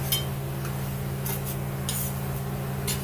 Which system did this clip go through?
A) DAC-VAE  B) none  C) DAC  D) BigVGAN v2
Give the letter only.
B